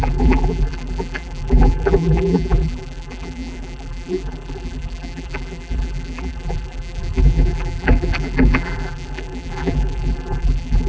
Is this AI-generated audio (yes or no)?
yes